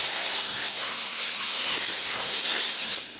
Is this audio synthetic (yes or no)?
yes